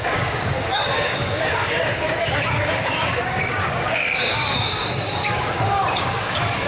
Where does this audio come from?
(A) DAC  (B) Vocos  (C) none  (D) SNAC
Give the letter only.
A